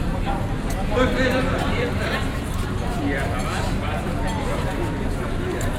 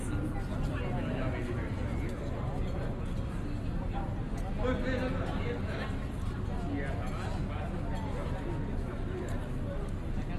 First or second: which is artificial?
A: first